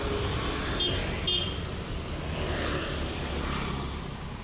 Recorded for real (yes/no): yes